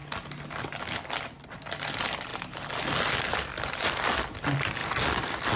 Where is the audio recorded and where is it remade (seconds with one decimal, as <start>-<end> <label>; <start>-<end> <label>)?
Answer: 0.0-5.6 recorded